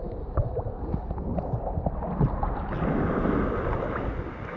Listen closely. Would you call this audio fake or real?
real